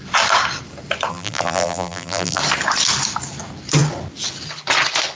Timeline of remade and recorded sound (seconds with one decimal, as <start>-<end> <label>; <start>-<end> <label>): 0.0-1.1 recorded; 1.1-2.4 remade; 2.4-5.2 recorded